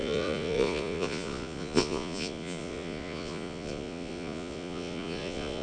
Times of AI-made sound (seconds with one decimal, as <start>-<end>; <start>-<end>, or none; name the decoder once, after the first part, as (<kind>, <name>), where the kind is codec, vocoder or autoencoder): 0.0-5.6 (vocoder, Vocos)